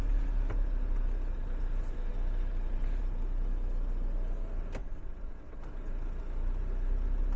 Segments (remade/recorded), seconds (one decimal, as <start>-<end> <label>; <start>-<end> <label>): 0.0-4.8 recorded; 4.8-5.6 remade; 5.6-7.4 recorded